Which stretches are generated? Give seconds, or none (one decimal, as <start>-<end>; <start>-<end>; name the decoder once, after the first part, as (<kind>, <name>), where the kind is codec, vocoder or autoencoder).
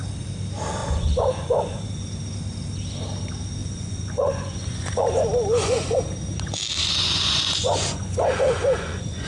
0.8-1.9 (vocoder, Vocos); 3.6-6.0; 6.8-9.3